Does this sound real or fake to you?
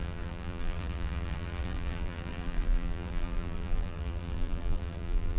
fake